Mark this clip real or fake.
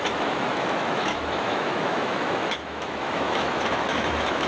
fake